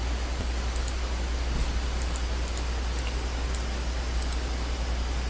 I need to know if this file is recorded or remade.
recorded